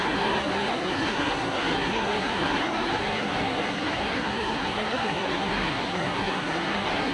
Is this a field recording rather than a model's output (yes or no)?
no